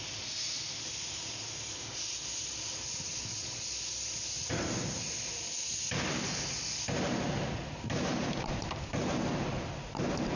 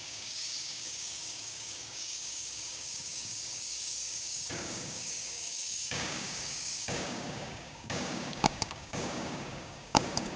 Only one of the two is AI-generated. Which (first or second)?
second